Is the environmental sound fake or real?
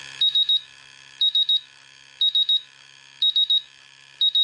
fake